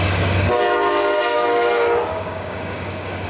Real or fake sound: fake